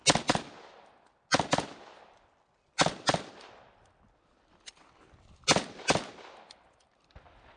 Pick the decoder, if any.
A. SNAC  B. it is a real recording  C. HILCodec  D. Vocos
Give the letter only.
B